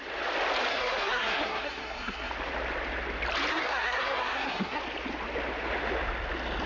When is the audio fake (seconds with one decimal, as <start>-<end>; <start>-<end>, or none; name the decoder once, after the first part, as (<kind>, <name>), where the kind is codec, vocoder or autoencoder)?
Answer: 0.7-2.3 (codec, SNAC); 3.5-4.8